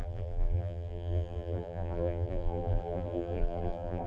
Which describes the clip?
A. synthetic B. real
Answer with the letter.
A